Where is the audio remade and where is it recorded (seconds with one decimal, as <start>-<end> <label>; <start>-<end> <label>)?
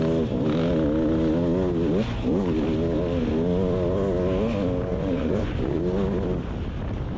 0.0-4.9 recorded; 4.9-5.8 remade; 5.8-7.2 recorded